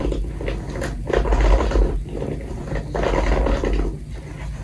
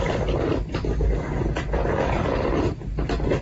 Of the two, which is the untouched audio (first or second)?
first